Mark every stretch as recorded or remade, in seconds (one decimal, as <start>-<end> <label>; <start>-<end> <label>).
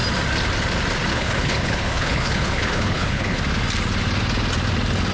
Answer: 0.0-1.1 recorded; 1.1-3.4 remade; 3.4-5.1 recorded